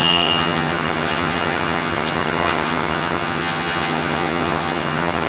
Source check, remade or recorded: remade